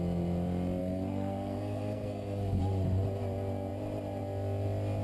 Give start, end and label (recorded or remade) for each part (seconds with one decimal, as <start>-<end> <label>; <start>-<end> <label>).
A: 0.0-0.8 recorded; 0.8-2.6 remade; 2.6-5.0 recorded